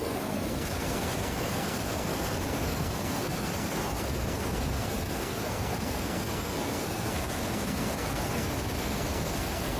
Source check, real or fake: fake